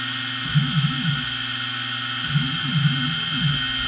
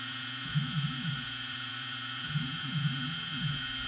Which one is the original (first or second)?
first